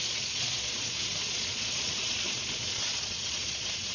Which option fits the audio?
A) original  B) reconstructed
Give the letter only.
B